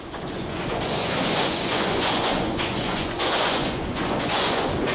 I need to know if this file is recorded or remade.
remade